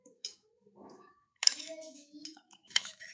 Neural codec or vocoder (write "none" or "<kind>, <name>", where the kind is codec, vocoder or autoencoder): autoencoder, DAC-VAE